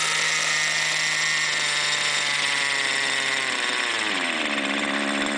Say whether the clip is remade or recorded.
recorded